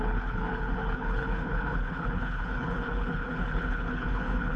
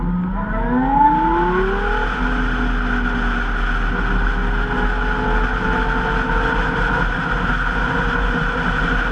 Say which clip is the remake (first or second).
first